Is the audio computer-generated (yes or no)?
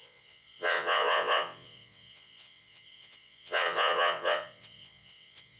yes